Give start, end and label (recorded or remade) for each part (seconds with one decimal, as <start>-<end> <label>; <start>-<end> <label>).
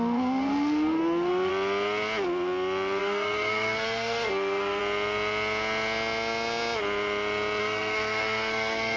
0.0-1.5 remade; 1.5-3.0 recorded; 3.0-4.8 remade; 4.8-7.6 recorded; 7.6-9.0 remade